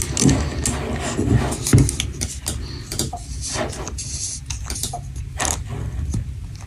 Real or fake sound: real